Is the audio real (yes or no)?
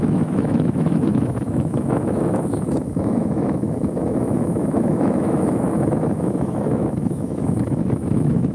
no